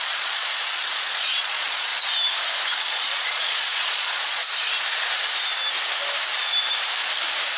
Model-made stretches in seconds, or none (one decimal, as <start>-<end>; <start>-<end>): 0.0-1.9; 2.8-4.4